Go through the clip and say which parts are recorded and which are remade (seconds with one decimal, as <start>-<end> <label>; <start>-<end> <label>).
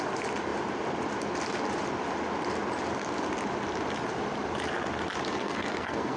0.0-5.3 recorded; 5.3-6.2 remade